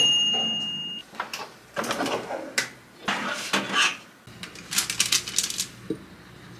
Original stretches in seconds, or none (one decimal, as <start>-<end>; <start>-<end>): 0.0-1.0; 1.9-6.6